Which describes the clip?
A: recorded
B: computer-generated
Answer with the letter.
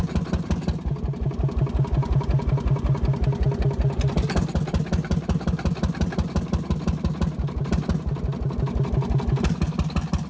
A